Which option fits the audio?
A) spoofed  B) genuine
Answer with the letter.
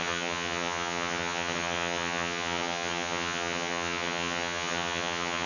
A